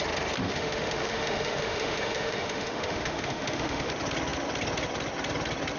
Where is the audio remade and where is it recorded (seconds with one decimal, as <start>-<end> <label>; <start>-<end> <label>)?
0.0-0.4 recorded; 0.4-3.9 remade; 3.9-5.8 recorded